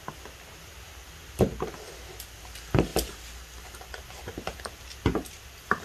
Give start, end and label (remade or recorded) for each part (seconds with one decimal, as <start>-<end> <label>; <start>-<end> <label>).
0.0-2.9 recorded; 2.9-4.7 remade; 4.7-5.8 recorded